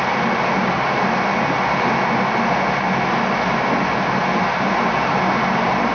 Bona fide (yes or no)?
yes